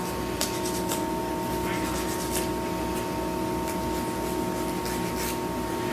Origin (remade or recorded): recorded